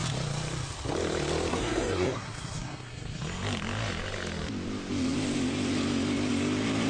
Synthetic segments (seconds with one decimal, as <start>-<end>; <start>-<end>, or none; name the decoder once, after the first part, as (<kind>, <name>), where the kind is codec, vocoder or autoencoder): 1.5-3.2 (codec, SNAC)